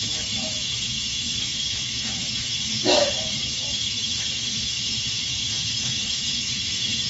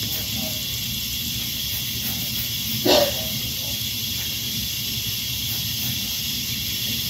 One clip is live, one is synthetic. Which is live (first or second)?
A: second